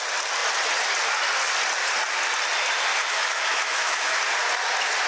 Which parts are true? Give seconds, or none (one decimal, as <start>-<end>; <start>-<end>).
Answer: 0.0-2.9; 4.2-5.1